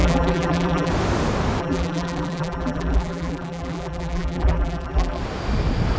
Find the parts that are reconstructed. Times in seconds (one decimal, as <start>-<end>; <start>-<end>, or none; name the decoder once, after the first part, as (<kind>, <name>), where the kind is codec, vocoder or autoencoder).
0.0-0.9 (vocoder, BigVGAN v2); 1.6-5.2